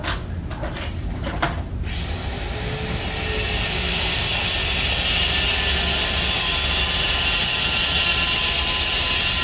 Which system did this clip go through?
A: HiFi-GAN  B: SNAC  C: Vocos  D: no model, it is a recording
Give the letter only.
D